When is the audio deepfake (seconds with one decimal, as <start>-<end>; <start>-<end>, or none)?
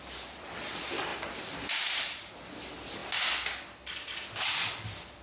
1.1-2.3